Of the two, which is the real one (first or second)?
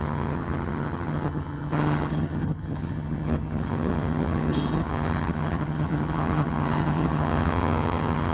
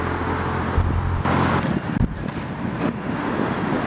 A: second